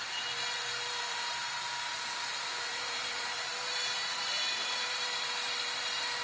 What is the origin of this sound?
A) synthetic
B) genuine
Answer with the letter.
A